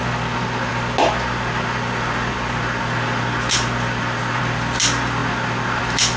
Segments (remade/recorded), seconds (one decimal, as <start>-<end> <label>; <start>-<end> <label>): 0.0-6.2 recorded